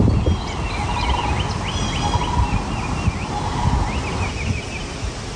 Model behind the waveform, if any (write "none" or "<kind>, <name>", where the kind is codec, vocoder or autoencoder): none